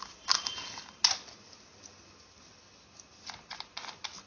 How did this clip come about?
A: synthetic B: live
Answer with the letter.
B